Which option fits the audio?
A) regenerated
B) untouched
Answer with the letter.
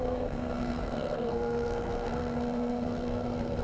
A